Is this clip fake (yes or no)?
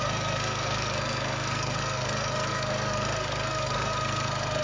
yes